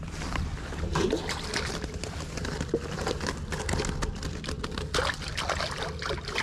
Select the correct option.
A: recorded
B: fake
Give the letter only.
A